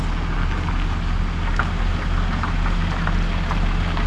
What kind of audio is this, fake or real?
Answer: real